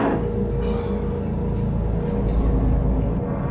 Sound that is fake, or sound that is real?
real